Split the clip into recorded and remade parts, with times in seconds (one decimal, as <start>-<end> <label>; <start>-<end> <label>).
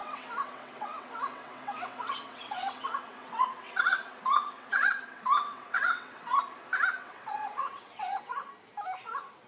0.0-6.4 remade; 6.4-7.0 recorded; 7.0-8.5 remade; 8.5-9.0 recorded; 9.0-9.5 remade